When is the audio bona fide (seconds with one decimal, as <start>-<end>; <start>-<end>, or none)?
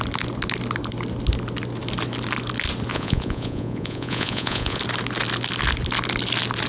0.0-2.9; 4.8-6.7